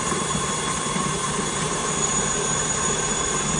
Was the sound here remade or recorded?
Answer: remade